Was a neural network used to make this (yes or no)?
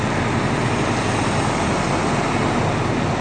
no